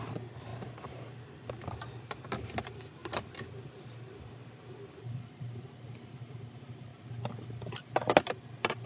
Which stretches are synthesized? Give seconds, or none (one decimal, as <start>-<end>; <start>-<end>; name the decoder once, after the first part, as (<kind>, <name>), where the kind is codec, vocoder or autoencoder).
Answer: 0.0-0.5 (vocoder, BigVGAN v2); 1.4-3.0; 4.2-6.9